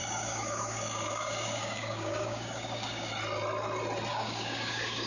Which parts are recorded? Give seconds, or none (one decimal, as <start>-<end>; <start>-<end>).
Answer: 3.1-4.1